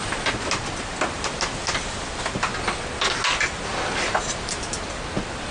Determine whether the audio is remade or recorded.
recorded